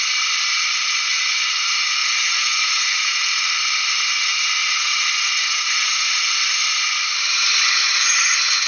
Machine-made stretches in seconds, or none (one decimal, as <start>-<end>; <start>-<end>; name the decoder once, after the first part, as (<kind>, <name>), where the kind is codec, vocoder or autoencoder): 2.0-3.5 (vocoder, Vocos); 4.6-6.3; 7.8-8.7